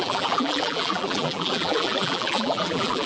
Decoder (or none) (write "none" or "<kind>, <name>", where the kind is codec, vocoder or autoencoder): vocoder, BigVGAN v2